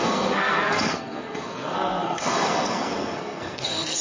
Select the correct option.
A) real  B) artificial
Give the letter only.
B